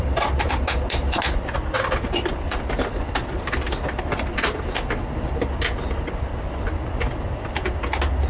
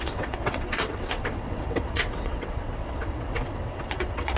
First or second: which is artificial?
second